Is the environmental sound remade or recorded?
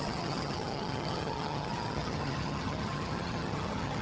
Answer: remade